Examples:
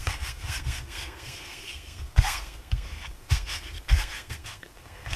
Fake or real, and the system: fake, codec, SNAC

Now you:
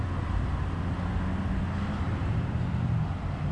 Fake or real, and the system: real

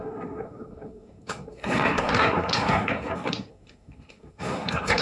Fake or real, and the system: fake, codec, SNAC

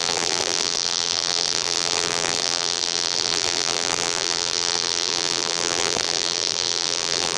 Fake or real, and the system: fake, vocoder, BigVGAN v2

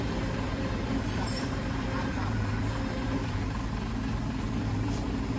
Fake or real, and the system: fake, vocoder, BigVGAN v2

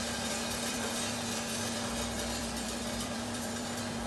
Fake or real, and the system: fake, vocoder, BigVGAN v2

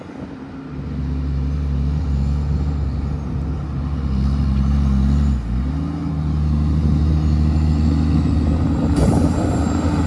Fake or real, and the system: real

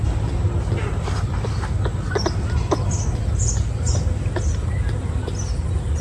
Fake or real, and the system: real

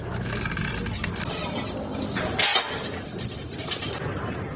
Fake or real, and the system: real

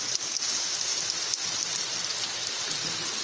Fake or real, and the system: real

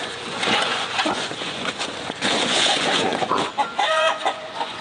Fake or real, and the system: fake, vocoder, Vocos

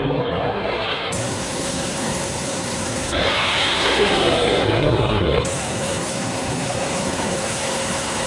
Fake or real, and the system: fake, codec, SNAC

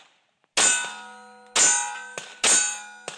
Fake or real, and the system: real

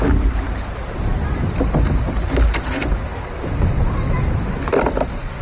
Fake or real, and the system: real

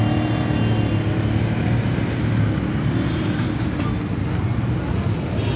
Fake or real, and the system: real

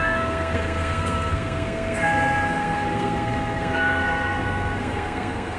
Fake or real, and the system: fake, codec, SNAC